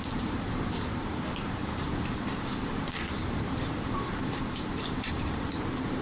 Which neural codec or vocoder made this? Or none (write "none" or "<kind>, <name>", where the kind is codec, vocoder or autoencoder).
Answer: vocoder, BigVGAN v2